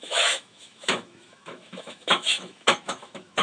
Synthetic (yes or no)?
yes